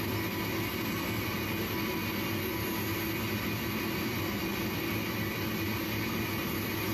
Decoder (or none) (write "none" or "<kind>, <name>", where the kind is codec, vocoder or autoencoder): none